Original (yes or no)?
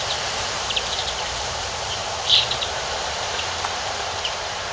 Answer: no